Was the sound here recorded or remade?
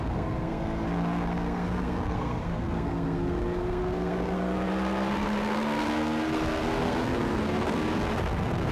remade